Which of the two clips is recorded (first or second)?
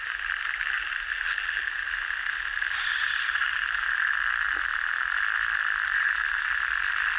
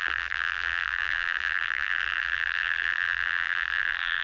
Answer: first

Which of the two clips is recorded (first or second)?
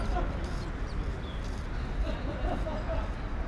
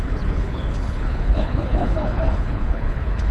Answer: first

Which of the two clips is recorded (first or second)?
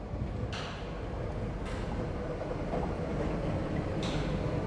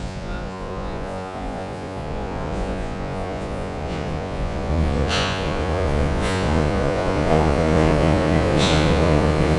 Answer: first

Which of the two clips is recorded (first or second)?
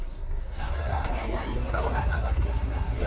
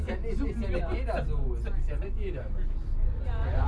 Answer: second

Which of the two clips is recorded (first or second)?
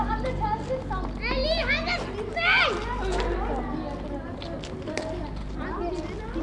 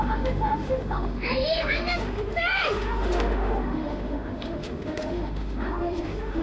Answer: first